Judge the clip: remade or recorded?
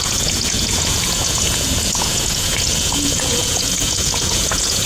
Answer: remade